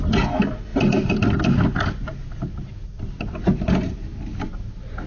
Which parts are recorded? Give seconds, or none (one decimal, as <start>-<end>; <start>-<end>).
0.0-5.1